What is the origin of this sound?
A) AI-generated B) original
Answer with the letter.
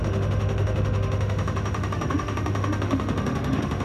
A